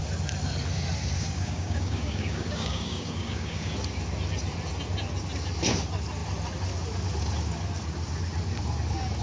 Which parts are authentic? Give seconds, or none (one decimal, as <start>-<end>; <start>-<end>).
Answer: 0.0-1.2; 3.7-9.2